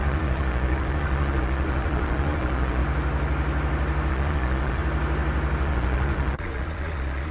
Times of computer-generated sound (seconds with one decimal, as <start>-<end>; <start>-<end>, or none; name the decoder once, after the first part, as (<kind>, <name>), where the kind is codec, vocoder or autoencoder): 0.0-2.8 (vocoder, Vocos); 4.1-4.8; 5.6-7.3

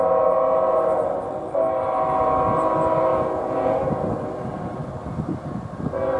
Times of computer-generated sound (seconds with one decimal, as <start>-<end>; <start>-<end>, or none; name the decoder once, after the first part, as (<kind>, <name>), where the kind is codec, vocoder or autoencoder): 3.1-3.8 (vocoder, Vocos)

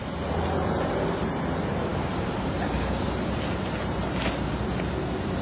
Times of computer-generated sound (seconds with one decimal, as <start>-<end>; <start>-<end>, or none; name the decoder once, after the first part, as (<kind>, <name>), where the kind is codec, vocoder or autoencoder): none

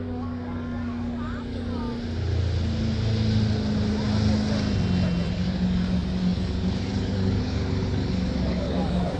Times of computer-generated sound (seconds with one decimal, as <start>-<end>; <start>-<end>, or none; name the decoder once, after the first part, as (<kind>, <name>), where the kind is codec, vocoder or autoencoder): 0.0-1.8 (codec, DAC); 5.3-9.2